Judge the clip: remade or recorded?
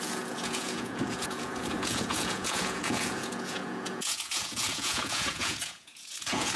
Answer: remade